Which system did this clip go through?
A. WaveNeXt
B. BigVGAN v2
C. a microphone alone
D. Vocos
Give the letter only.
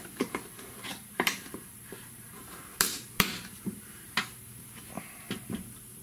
B